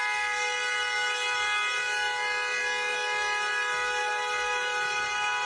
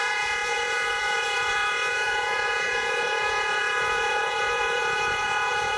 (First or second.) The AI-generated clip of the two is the second